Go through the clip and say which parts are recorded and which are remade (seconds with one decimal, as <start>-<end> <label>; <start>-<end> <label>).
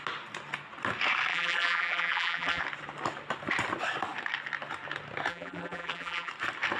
0.0-1.3 recorded; 1.3-2.6 remade; 2.6-5.3 recorded; 5.3-6.3 remade; 6.3-6.8 recorded